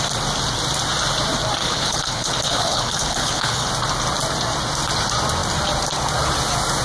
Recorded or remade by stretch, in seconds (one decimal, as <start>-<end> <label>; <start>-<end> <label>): 0.0-1.6 recorded; 1.6-3.7 remade; 3.7-6.8 recorded

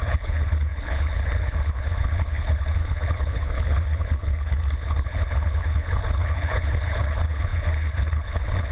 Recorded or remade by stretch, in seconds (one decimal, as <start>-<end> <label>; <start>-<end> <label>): 0.0-8.7 remade

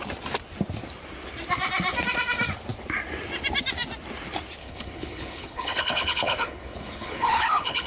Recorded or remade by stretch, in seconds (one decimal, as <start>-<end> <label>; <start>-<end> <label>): 0.0-4.6 recorded; 4.6-7.9 remade

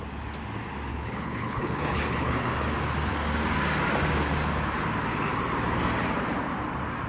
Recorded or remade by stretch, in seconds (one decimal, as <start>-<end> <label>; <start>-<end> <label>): 0.0-0.9 recorded; 0.9-2.5 remade; 2.5-7.1 recorded

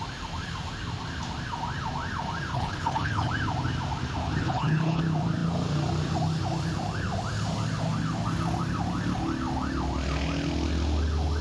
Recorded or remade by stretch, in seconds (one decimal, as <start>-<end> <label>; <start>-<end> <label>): 0.0-2.5 recorded; 2.5-3.3 remade; 3.3-4.4 recorded; 4.4-5.0 remade; 5.0-11.4 recorded